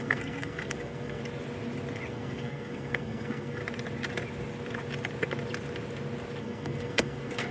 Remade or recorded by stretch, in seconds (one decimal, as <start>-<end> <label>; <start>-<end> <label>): 0.0-1.2 remade; 1.2-2.1 recorded; 2.1-3.6 remade; 3.6-6.4 recorded; 6.4-7.5 remade